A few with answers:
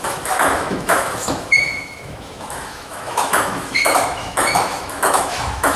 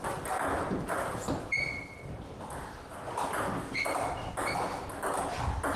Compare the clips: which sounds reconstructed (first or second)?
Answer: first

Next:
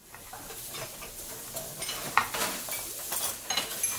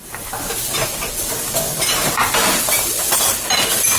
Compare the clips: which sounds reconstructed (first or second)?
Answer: second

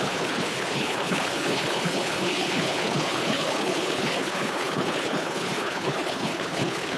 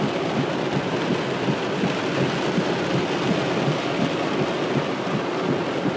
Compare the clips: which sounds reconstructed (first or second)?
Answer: first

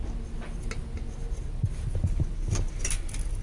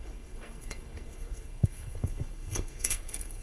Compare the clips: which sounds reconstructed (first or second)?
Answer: second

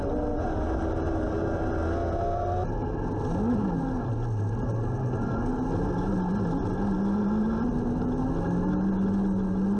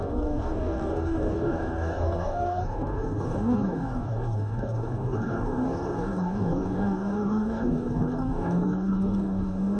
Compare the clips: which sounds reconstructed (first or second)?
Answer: second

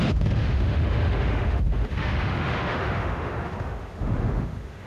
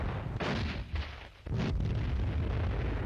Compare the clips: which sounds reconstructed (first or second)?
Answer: first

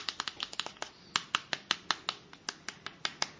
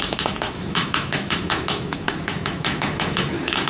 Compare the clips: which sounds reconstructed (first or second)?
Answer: second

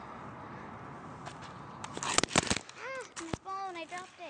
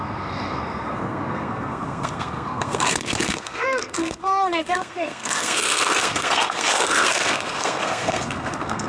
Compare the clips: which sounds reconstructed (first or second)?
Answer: second